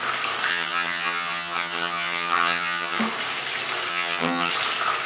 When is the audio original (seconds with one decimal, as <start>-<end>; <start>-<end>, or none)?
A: 0.0-0.5; 3.0-3.9; 4.5-5.1